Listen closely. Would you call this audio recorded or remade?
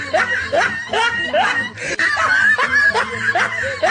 recorded